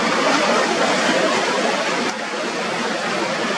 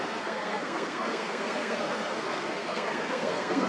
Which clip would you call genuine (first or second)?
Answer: first